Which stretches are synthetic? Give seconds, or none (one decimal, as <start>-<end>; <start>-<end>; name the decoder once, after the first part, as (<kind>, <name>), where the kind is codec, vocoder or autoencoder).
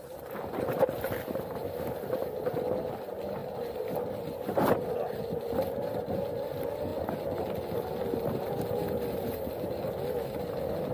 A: none